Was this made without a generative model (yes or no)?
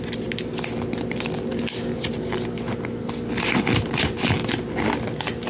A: yes